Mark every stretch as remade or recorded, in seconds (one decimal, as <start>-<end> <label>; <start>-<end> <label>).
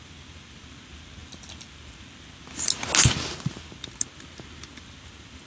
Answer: 0.0-5.5 recorded